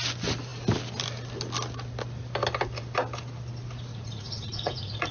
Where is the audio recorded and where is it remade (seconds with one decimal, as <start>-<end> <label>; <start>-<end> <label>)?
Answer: 0.0-3.9 recorded; 3.9-5.1 remade